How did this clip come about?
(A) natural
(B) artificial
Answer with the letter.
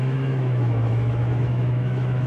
B